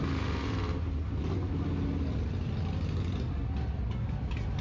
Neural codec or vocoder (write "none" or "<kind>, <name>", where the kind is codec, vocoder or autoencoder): none